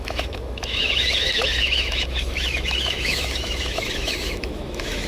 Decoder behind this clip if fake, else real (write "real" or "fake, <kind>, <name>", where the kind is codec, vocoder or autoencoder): fake, autoencoder, DAC-VAE